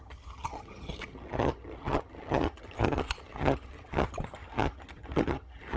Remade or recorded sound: remade